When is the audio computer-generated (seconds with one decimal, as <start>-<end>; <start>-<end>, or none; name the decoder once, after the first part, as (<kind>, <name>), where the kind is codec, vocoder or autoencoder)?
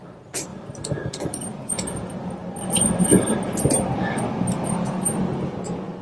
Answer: 0.5-1.9 (vocoder, BigVGAN v2)